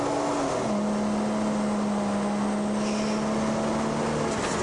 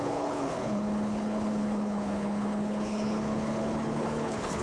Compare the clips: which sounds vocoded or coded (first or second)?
second